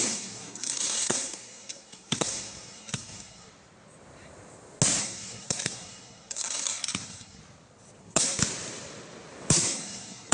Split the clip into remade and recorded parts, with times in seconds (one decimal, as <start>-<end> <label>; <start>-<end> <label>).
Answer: 0.0-3.5 remade; 3.5-5.0 recorded; 5.0-7.4 remade; 7.4-8.0 recorded; 8.0-8.4 remade; 8.4-9.5 recorded; 9.5-10.3 remade